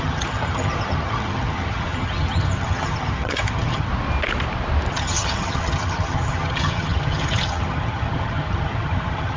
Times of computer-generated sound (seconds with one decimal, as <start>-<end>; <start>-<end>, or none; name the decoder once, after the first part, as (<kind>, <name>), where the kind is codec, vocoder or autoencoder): 0.0-3.9 (vocoder, HiFi-GAN); 4.9-9.4